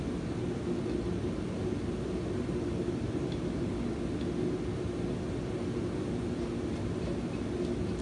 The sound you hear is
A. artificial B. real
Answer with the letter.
B